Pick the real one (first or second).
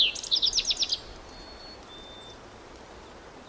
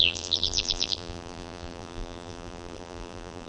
first